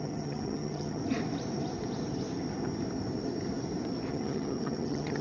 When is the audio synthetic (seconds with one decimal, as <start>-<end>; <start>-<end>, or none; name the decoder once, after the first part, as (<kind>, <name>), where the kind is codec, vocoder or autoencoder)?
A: 0.0-1.0 (vocoder, HiFi-GAN); 4.1-5.2